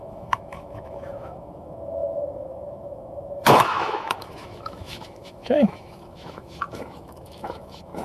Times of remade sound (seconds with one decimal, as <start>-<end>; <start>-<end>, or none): 0.0-8.0